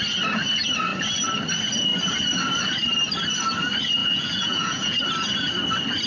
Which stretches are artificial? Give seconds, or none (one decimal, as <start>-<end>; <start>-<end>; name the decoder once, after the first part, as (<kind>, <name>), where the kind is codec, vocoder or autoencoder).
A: 4.0-5.0 (vocoder, Vocos)